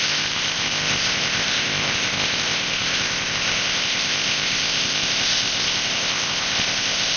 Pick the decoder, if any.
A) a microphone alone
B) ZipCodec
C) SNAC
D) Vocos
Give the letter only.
B